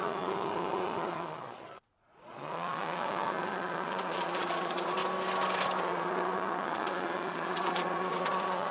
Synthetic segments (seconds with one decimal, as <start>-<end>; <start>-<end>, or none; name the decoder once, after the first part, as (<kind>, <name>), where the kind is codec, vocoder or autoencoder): 0.0-5.0 (vocoder, Vocos); 5.8-8.7